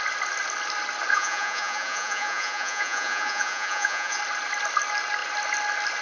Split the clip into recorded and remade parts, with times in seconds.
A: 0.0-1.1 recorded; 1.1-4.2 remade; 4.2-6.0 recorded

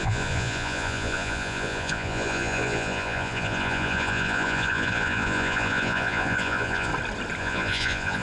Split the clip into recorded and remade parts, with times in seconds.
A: 0.0-6.9 remade; 6.9-7.4 recorded; 7.4-8.2 remade

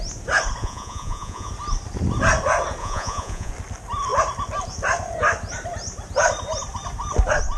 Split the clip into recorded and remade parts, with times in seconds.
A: 0.0-0.6 recorded; 0.6-1.5 remade; 1.5-2.8 recorded; 2.8-3.5 remade; 3.5-7.6 recorded